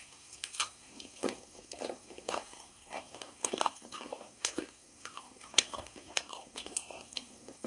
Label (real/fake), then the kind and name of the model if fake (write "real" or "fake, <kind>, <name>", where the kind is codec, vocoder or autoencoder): fake, codec, SNAC